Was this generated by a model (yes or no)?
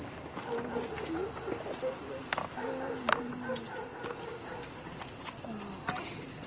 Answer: no